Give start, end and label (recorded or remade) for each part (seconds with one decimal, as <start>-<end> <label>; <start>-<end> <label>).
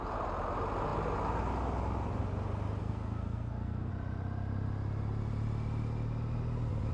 0.0-2.8 recorded; 2.8-3.9 remade; 3.9-6.9 recorded